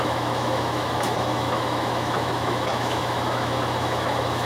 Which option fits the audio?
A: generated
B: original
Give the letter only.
A